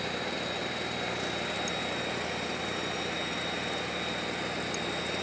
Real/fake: real